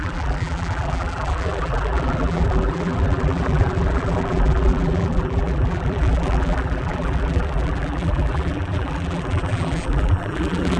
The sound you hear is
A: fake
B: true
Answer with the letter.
A